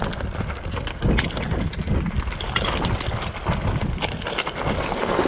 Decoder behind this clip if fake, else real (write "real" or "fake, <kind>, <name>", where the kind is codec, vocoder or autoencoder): real